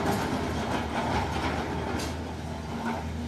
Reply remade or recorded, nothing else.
recorded